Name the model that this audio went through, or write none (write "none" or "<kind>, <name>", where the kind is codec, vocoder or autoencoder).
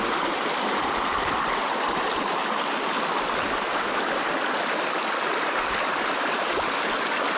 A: none